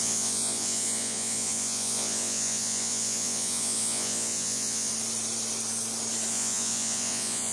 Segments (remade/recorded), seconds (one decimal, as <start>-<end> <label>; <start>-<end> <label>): 0.0-4.9 remade; 4.9-6.3 recorded; 6.3-7.5 remade